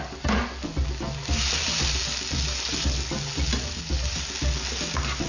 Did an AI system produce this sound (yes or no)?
no